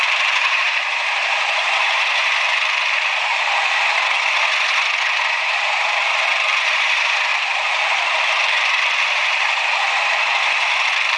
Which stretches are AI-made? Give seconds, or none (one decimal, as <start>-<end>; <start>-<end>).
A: 0.0-3.3; 5.1-11.2